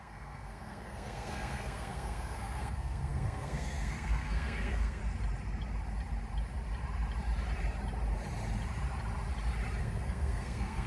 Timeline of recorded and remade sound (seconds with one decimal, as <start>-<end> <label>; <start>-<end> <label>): 0.0-5.0 remade; 5.0-9.8 recorded; 9.8-10.9 remade